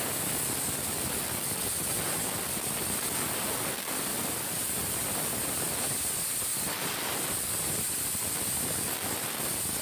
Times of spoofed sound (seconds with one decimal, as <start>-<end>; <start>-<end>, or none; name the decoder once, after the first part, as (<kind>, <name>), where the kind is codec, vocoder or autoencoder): 4.1-4.9 (vocoder, BigVGAN v2)